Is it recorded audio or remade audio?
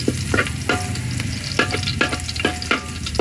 recorded